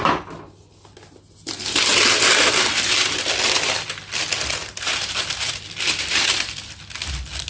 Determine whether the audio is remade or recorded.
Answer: recorded